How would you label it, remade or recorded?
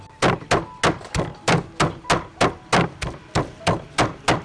recorded